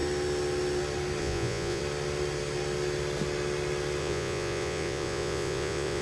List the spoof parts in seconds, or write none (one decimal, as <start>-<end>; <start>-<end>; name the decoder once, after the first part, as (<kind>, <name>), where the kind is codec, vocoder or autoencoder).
1.2-1.8 (vocoder, Vocos); 4.0-6.0